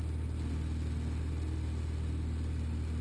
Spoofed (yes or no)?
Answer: no